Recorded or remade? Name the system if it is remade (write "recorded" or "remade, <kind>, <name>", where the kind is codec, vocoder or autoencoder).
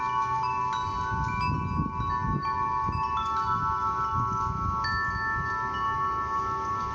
recorded